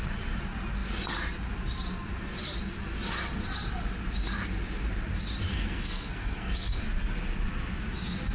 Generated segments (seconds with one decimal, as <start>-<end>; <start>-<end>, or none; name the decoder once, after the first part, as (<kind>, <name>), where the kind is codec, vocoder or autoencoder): 5.5-6.8 (codec, SNAC)